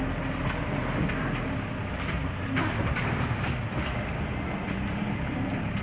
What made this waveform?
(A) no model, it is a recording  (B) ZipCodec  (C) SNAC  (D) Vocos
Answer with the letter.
A